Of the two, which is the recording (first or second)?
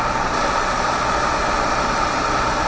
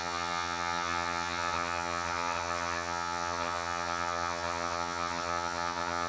first